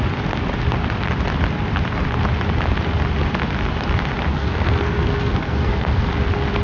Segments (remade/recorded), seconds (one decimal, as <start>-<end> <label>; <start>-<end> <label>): 0.0-4.3 recorded; 4.3-6.1 remade; 6.1-6.6 recorded

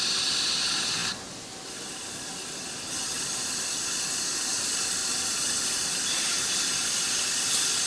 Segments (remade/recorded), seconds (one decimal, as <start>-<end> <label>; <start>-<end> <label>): 0.0-7.9 recorded

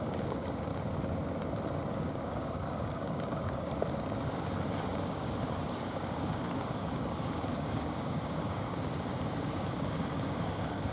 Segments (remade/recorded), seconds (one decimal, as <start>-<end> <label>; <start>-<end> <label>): 0.0-0.7 remade; 0.7-1.9 recorded; 1.9-3.7 remade; 3.7-4.9 recorded; 4.9-10.9 remade